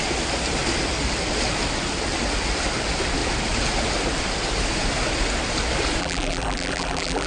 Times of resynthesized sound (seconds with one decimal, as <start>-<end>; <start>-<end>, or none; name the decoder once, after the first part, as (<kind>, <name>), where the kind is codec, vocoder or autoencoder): 6.0-7.3 (vocoder, BigVGAN v2)